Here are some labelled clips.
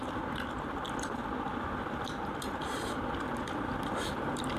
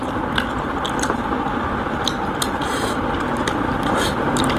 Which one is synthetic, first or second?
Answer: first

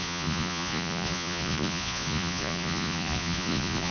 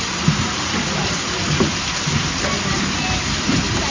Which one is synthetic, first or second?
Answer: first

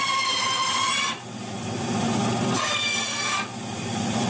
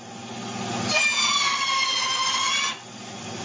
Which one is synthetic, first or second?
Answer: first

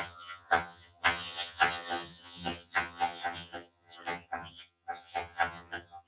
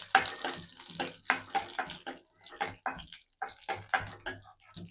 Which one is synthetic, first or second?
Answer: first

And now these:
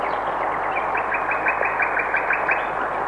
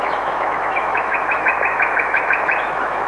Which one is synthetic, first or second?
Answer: second